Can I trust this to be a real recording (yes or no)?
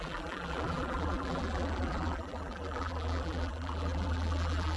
no